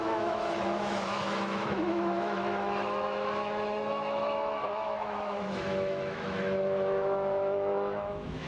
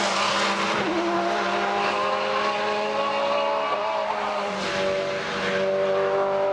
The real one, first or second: second